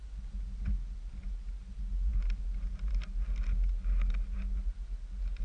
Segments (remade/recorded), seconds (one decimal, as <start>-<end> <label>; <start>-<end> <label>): 0.0-5.4 recorded